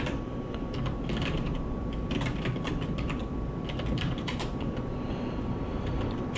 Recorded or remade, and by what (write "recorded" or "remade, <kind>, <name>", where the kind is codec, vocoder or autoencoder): remade, vocoder, BigVGAN v2